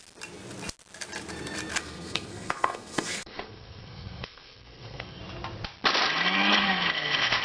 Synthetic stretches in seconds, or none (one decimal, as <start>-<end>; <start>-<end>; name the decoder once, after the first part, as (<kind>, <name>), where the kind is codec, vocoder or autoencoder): 1.8-5.2 (codec, SNAC); 6.6-7.4